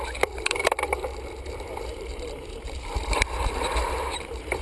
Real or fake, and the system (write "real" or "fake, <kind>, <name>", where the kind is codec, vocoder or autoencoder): fake, vocoder, BigVGAN v2